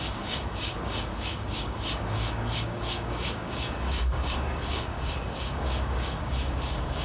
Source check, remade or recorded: remade